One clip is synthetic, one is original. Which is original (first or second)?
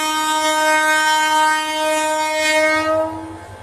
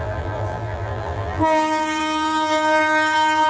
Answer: first